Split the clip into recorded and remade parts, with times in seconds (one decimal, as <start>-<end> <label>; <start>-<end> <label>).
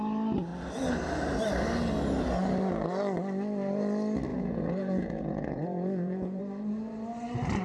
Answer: 0.0-4.3 recorded; 4.3-6.4 remade; 6.4-7.6 recorded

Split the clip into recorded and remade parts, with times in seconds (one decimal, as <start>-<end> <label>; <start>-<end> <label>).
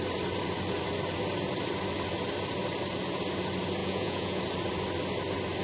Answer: 0.0-3.8 recorded; 3.8-4.4 remade; 4.4-5.6 recorded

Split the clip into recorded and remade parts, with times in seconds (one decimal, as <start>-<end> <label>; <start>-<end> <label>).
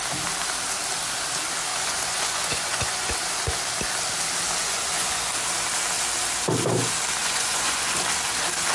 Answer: 0.0-1.7 recorded; 1.7-3.1 remade; 3.1-4.6 recorded; 4.6-5.3 remade; 5.3-7.2 recorded; 7.2-8.0 remade; 8.0-8.7 recorded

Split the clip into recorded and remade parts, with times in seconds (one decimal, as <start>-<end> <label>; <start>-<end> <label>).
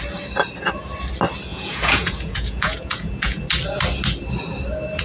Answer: 0.0-1.5 recorded; 1.5-3.4 remade; 3.4-5.0 recorded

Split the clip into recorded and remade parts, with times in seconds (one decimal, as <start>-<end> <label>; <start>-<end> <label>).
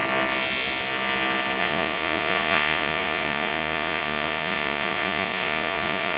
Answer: 0.0-1.6 recorded; 1.6-6.2 remade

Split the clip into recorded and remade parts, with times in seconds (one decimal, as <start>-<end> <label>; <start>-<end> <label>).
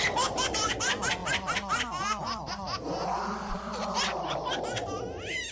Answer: 0.0-5.5 recorded